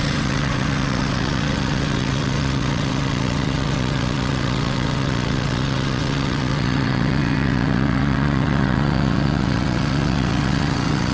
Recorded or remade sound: remade